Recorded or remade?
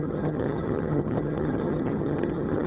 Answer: remade